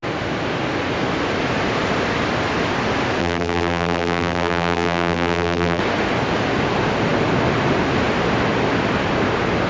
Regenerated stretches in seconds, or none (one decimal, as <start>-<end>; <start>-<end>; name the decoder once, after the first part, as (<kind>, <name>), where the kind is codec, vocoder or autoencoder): 3.2-5.8 (vocoder, BigVGAN v2)